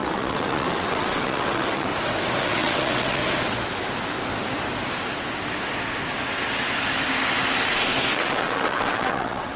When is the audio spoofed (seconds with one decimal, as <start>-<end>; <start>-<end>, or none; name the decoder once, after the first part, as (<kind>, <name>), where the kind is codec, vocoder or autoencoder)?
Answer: 0.0-1.9 (vocoder, WaveNeXt); 2.4-3.2; 8.1-9.6